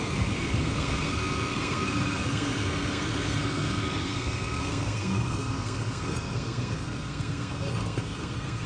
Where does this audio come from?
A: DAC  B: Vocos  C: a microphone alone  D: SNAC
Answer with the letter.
D